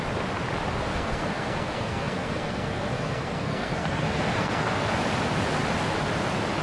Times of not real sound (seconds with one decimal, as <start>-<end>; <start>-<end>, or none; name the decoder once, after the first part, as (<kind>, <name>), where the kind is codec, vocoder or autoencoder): 0.9-4.9 (codec, SNAC)